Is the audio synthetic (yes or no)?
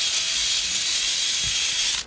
no